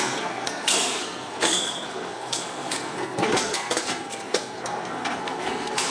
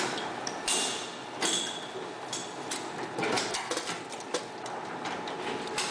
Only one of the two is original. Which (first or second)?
second